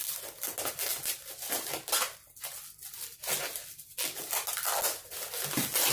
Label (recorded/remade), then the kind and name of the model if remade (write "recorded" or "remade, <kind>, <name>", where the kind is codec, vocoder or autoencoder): recorded